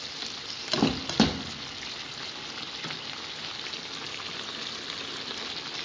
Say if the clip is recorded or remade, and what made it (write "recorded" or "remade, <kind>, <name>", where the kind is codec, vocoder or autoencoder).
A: recorded